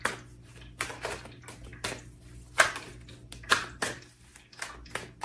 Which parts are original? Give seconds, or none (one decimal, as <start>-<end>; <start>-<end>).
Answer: 0.0-5.2